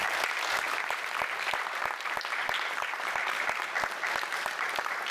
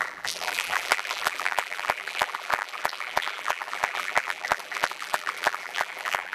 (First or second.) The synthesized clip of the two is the second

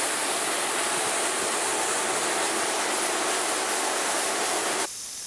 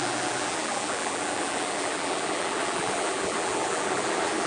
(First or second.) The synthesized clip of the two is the second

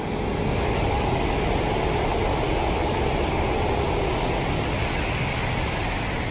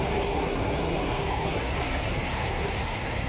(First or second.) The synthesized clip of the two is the second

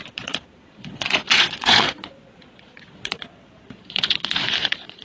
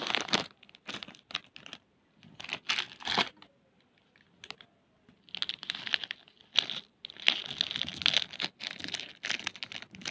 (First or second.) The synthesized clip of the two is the first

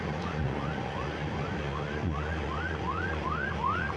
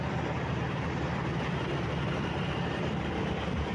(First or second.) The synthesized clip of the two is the first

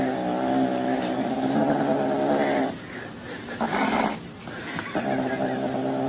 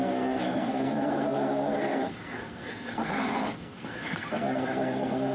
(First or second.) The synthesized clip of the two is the second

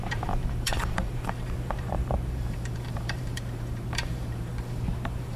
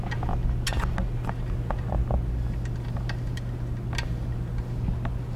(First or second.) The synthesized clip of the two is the first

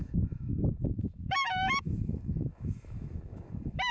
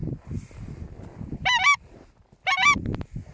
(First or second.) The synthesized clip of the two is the first